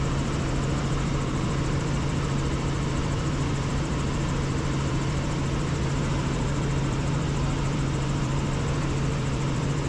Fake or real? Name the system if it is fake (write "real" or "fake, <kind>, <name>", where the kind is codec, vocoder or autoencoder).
fake, vocoder, BigVGAN v2